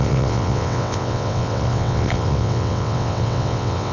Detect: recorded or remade remade